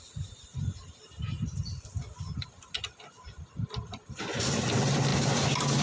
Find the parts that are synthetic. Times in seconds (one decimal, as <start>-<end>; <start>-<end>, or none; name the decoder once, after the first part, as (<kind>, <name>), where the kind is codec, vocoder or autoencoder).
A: none